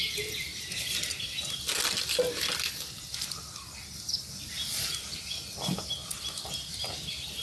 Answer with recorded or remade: recorded